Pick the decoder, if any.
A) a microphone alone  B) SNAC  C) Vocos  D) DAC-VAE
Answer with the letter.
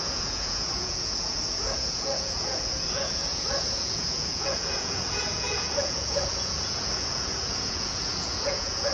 C